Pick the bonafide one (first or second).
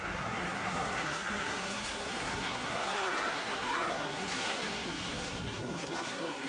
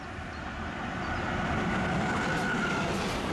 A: second